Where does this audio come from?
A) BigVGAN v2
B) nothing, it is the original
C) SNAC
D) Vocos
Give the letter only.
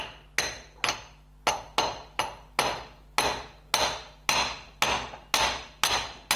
B